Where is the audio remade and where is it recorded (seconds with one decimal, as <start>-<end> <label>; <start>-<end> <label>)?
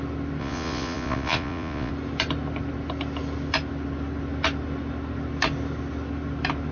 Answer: 0.0-0.4 recorded; 0.4-1.9 remade; 1.9-6.7 recorded